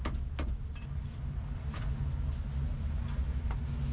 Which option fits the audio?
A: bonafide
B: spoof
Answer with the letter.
A